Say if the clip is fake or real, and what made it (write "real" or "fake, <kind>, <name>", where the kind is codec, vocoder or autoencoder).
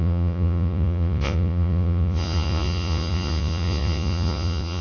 fake, vocoder, Vocos